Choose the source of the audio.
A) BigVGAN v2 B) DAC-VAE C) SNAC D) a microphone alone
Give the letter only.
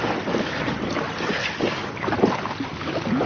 D